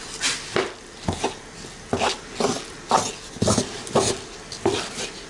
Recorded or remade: recorded